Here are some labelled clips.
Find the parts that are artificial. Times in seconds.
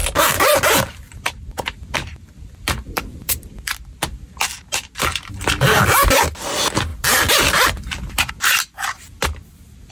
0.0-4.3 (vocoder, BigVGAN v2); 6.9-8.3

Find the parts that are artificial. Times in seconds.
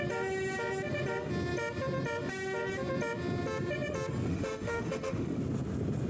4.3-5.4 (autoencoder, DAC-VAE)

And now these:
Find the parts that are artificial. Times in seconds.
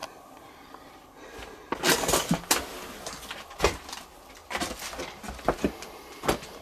0.0-1.6 (vocoder, BigVGAN v2); 4.4-5.0